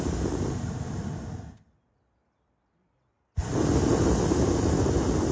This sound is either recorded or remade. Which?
recorded